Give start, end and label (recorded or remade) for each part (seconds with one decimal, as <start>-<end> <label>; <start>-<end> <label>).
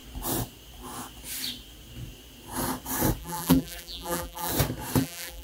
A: 0.0-3.2 recorded; 3.2-4.5 remade; 4.5-5.0 recorded; 5.0-5.4 remade